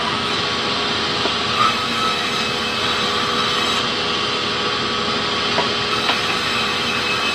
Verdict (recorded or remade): recorded